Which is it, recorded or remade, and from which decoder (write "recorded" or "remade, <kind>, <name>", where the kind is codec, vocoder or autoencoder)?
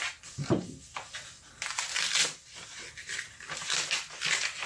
recorded